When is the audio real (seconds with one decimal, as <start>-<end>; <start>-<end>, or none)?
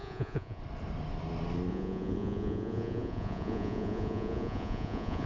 0.6-1.7